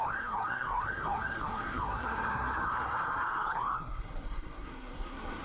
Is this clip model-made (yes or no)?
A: yes